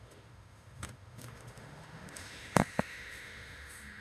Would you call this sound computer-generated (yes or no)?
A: yes